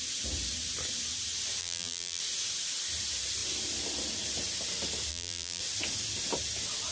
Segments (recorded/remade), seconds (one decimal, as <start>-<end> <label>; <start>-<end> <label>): 0.0-1.6 recorded; 1.6-2.2 remade; 2.2-5.1 recorded; 5.1-5.6 remade; 5.6-6.9 recorded